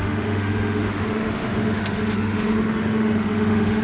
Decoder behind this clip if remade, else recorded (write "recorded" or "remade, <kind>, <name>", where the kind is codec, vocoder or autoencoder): remade, autoencoder, DAC-VAE